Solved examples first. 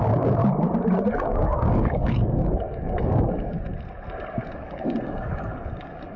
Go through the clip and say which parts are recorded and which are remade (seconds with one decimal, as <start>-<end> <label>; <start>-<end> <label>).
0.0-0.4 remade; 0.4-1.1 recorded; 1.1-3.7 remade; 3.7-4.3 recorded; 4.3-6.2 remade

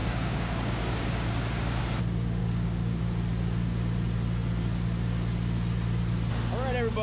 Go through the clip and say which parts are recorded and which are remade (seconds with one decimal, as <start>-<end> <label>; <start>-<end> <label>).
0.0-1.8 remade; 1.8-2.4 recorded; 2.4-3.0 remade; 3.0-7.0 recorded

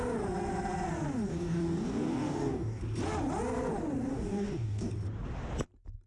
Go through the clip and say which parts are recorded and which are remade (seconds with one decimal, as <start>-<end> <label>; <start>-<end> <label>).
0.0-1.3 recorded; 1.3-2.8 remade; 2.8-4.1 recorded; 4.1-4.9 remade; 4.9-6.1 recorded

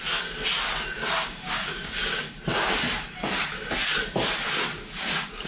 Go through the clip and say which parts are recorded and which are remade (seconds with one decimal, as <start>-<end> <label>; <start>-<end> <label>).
0.0-1.0 recorded; 1.0-2.7 remade; 2.7-4.7 recorded; 4.7-5.5 remade